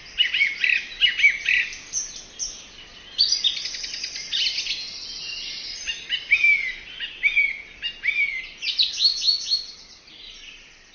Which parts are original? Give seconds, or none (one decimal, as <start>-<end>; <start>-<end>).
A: 0.0-10.9